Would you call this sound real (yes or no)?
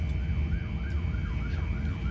yes